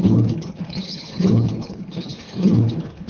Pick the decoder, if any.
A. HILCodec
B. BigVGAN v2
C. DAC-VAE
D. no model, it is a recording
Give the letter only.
A